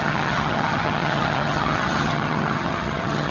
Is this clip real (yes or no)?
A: no